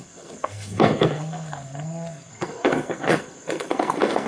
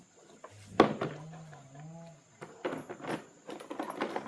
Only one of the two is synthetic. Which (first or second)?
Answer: first